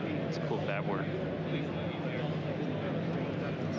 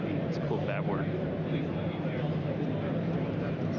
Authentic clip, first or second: first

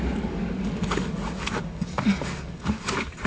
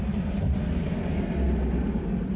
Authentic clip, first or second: second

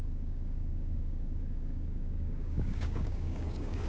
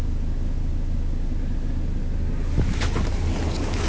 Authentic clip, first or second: second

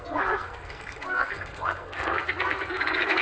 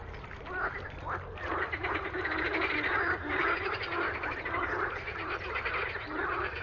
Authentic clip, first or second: second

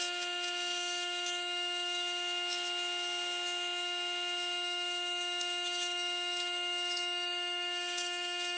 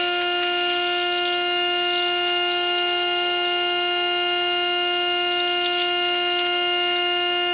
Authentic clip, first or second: second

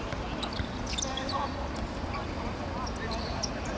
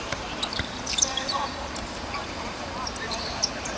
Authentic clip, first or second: first